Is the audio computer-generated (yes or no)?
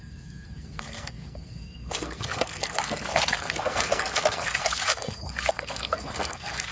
yes